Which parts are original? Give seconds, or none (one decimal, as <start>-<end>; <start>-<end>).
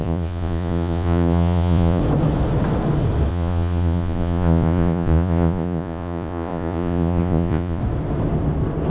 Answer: 2.0-3.3; 7.8-8.9